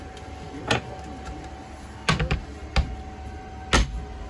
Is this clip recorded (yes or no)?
yes